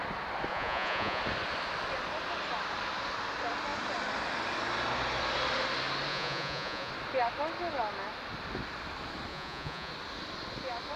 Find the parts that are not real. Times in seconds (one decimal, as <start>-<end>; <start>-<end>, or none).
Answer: 0.5-1.2; 6.1-6.9; 9.3-9.9